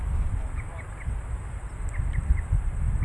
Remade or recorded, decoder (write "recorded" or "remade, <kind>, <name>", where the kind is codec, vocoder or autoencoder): recorded